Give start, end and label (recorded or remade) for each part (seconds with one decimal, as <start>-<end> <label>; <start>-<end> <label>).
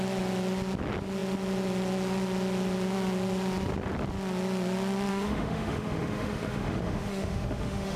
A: 0.0-5.1 recorded; 5.1-8.0 remade